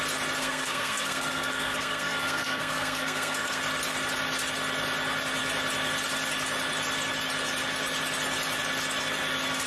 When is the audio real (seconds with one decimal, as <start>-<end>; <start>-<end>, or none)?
0.0-0.4; 3.6-9.7